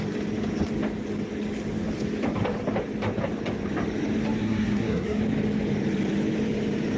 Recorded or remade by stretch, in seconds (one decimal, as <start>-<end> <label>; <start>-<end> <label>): 0.0-4.4 recorded; 4.4-5.2 remade; 5.2-7.0 recorded